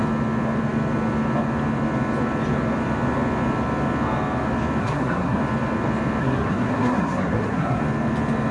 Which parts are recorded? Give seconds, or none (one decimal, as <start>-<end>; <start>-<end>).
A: 0.0-4.8; 5.4-6.2; 7.8-8.5